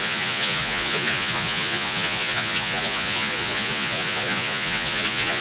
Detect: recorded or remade remade